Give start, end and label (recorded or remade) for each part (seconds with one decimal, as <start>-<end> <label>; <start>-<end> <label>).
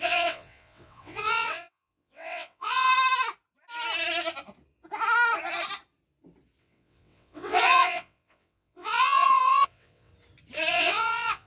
0.0-2.9 remade; 2.9-6.6 recorded; 6.6-10.1 remade; 10.1-10.7 recorded; 10.7-11.5 remade